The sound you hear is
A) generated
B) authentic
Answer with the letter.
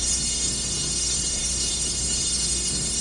A